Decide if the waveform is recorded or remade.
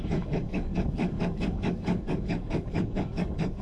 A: remade